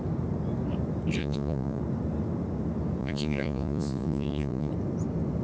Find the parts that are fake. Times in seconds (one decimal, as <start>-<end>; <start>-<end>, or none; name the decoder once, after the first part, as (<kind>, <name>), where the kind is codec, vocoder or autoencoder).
1.2-1.8 (vocoder, Vocos); 3.0-4.7